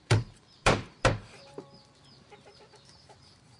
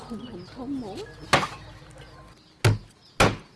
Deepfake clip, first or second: first